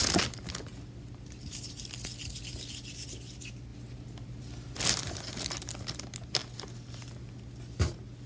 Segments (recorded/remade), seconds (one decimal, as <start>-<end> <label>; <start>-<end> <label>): 0.0-8.3 recorded